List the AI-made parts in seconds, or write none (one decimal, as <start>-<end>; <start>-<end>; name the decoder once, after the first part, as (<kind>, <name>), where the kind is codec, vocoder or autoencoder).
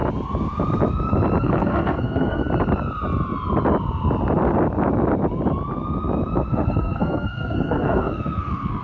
1.4-2.4 (codec, SNAC); 6.5-8.8